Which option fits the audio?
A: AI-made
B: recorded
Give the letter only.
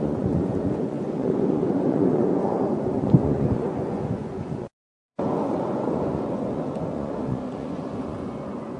A